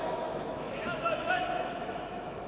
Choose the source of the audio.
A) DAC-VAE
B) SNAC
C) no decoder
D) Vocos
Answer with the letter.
A